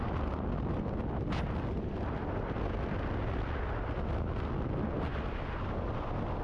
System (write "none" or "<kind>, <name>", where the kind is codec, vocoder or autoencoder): none